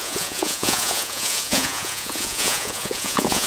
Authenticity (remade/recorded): remade